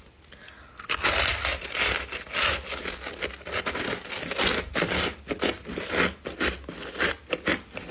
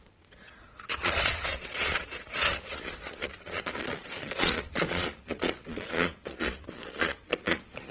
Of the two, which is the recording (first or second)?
first